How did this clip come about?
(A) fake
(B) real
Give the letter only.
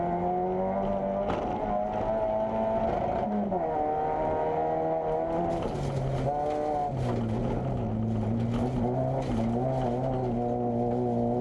B